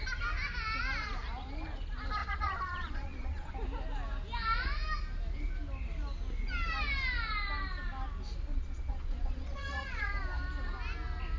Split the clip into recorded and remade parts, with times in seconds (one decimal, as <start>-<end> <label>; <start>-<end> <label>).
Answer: 0.0-2.2 recorded; 2.2-3.5 remade; 3.5-8.5 recorded; 8.5-10.1 remade; 10.1-11.4 recorded

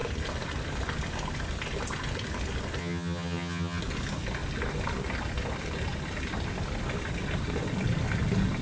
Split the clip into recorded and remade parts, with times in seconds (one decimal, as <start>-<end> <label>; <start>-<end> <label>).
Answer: 0.0-2.8 recorded; 2.8-3.8 remade; 3.8-8.6 recorded

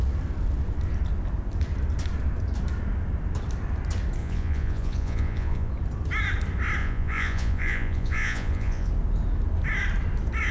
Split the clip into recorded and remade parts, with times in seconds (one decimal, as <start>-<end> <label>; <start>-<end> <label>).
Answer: 0.0-4.2 recorded; 4.2-5.7 remade; 5.7-6.8 recorded; 6.8-8.9 remade; 8.9-10.5 recorded